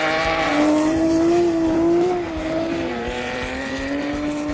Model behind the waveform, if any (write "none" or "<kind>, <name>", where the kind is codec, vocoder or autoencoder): vocoder, BigVGAN v2